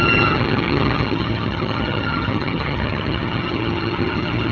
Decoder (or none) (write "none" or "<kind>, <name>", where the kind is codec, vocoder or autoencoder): vocoder, HiFi-GAN